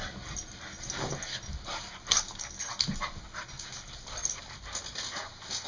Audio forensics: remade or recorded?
recorded